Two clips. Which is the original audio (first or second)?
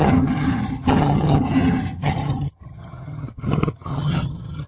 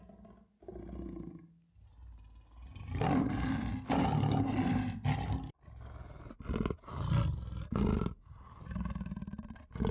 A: second